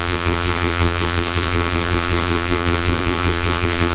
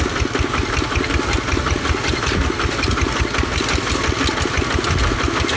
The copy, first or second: first